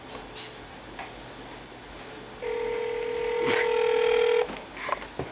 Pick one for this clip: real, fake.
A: real